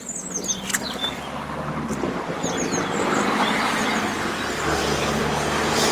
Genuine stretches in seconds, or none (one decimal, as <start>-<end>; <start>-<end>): 0.0-5.9